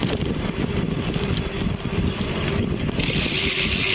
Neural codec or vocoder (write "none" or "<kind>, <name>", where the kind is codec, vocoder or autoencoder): none